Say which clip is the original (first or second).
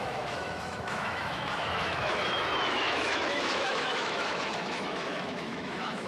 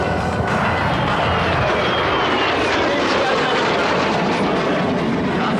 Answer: second